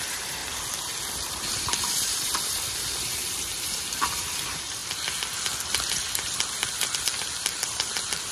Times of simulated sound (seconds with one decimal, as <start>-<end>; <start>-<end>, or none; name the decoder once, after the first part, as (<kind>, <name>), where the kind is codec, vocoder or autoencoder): 0.0-0.4 (vocoder, BigVGAN v2); 1.1-4.8; 6.8-8.3